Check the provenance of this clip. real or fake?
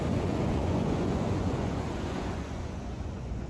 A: fake